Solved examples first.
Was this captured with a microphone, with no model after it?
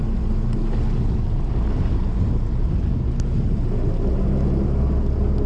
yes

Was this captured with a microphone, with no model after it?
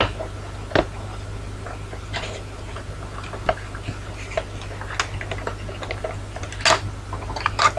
yes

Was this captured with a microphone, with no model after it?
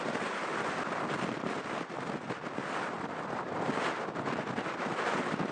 yes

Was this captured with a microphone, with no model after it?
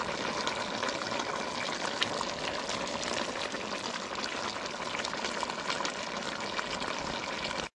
yes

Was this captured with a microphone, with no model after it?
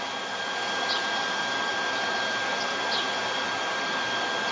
yes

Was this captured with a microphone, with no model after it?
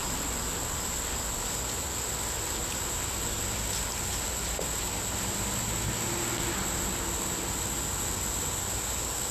yes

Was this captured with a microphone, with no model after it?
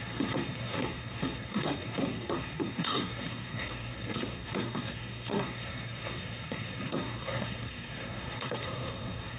no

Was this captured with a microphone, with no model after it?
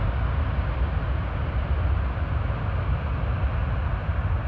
yes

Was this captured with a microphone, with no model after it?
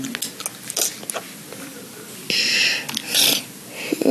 yes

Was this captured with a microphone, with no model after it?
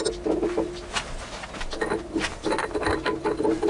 yes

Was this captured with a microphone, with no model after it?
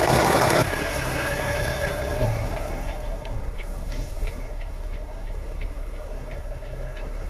no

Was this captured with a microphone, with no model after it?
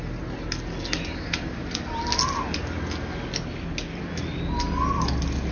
yes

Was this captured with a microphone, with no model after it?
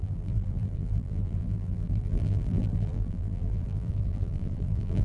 no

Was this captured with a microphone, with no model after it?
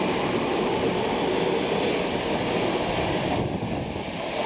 yes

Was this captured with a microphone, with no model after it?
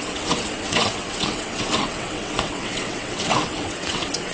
no